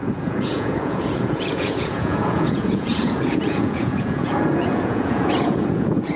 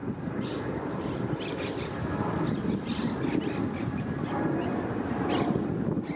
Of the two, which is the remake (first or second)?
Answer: first